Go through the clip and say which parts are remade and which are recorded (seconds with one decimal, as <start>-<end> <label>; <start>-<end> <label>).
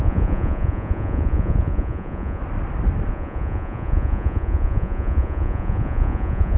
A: 0.0-2.4 remade; 2.4-3.1 recorded; 3.1-6.6 remade